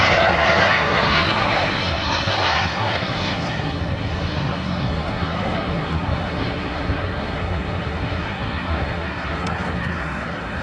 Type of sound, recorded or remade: remade